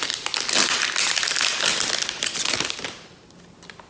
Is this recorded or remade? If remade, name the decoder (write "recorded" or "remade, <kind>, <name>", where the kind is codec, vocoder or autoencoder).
recorded